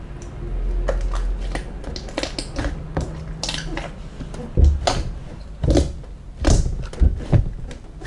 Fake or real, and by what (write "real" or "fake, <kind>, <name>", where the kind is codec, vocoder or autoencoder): real